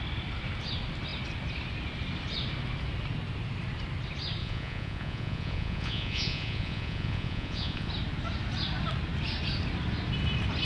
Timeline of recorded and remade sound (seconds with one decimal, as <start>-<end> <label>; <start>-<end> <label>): 0.0-4.4 recorded; 4.4-7.9 remade; 7.9-10.7 recorded